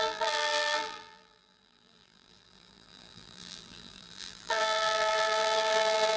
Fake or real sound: fake